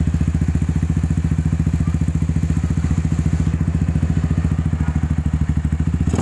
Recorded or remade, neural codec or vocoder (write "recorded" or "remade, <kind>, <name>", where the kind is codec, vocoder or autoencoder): recorded